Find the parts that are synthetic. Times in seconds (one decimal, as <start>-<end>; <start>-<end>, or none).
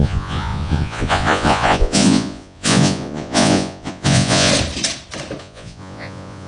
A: 0.0-4.5; 5.4-6.5